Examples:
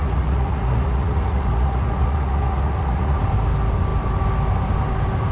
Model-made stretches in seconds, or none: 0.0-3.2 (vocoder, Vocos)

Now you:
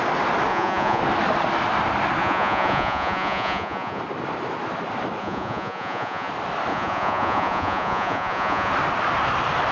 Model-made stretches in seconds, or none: 0.5-1.0 (vocoder, Vocos); 2.2-4.0; 5.2-6.3; 6.7-8.7

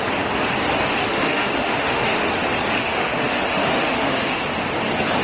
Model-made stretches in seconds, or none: 1.0-2.3 (autoencoder, DAC-VAE); 2.8-4.4